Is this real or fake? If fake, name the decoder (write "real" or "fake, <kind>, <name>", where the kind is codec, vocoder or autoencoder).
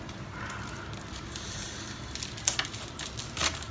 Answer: real